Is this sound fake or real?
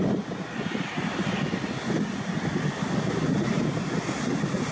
real